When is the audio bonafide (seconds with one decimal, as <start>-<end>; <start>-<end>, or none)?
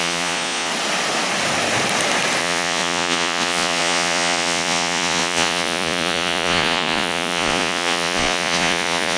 0.7-2.4